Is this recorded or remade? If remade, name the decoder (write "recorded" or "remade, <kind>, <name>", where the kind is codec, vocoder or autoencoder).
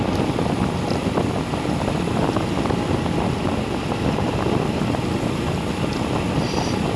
recorded